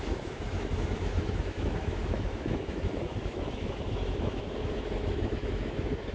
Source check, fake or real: fake